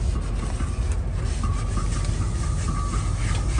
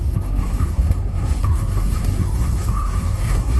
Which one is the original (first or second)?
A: first